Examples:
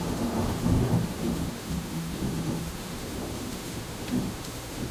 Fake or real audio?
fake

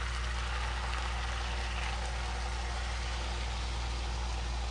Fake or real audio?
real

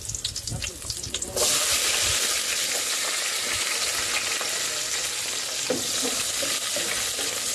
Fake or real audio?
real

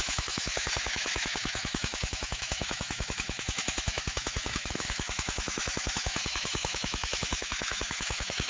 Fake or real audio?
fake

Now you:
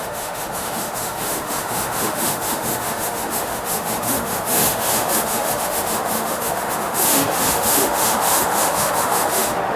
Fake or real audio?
fake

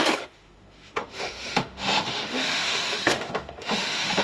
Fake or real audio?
fake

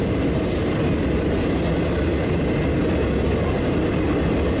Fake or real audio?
real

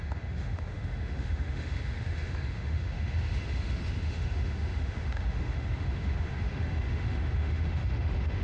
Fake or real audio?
fake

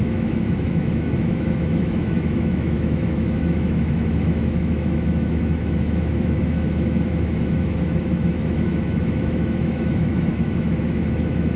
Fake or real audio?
fake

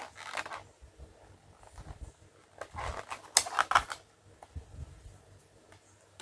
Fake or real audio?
real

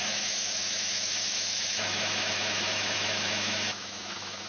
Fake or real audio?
fake